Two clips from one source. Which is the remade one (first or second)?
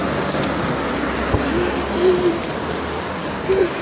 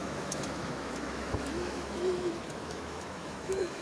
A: second